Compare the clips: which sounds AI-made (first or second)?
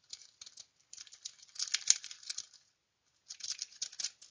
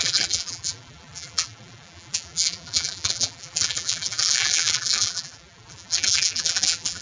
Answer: second